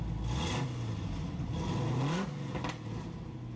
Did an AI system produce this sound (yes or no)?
no